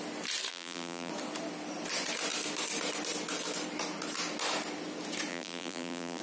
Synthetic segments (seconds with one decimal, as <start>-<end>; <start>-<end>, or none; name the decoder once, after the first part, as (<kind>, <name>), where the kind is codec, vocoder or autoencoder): 0.5-1.1 (vocoder, BigVGAN v2); 5.3-6.2